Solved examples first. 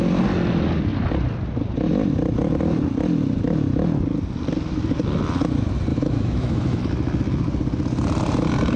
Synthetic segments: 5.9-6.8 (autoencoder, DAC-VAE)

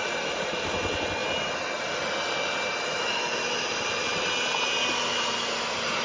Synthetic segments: none

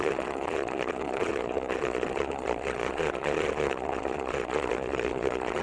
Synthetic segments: 0.0-5.6 (vocoder, Vocos)